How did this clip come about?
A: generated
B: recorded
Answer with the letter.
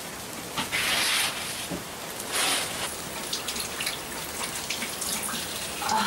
B